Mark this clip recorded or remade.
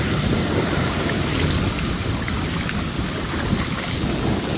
recorded